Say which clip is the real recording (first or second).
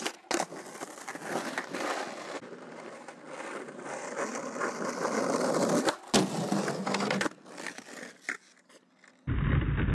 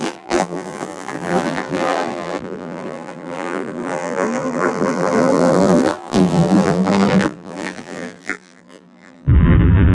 first